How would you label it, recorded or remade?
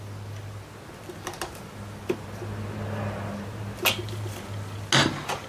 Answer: recorded